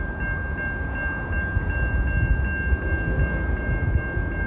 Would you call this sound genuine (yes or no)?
yes